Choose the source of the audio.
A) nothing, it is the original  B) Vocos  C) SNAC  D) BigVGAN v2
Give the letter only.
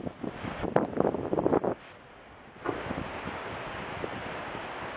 A